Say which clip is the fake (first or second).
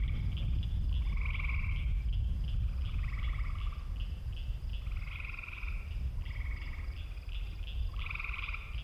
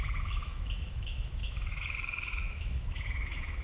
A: second